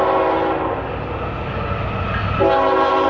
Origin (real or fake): real